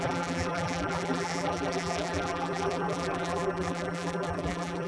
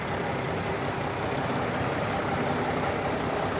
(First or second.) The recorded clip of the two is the second